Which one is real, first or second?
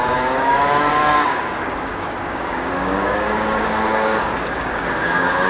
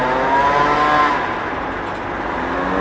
second